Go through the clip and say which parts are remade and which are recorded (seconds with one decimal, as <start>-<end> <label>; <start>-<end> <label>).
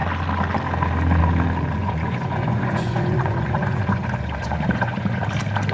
0.0-1.8 recorded; 1.8-5.2 remade; 5.2-5.7 recorded